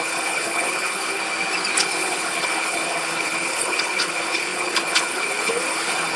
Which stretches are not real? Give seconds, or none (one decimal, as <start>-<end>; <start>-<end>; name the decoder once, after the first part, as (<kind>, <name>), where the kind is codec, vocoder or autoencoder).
0.0-1.2 (codec, HILCodec); 1.8-6.2

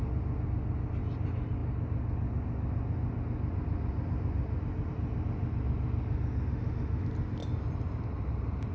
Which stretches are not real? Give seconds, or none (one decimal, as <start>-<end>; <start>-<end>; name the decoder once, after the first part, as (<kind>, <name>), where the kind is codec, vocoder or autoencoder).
6.5-7.0 (autoencoder, DAC-VAE)

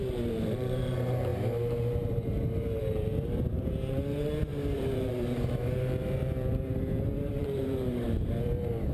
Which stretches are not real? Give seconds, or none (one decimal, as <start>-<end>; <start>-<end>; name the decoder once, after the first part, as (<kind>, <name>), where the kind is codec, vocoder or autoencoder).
0.0-8.9 (vocoder, BigVGAN v2)